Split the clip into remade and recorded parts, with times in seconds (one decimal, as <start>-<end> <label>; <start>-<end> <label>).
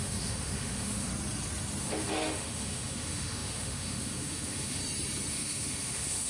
0.0-1.1 remade; 1.1-1.8 recorded; 1.8-4.8 remade; 4.8-5.3 recorded; 5.3-6.3 remade